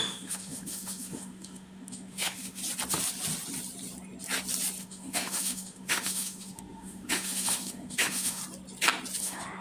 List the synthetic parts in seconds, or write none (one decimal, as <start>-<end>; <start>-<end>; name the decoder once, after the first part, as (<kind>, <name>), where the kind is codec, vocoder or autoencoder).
0.0-2.6 (autoencoder, DAC-VAE); 4.8-8.4; 9.2-9.6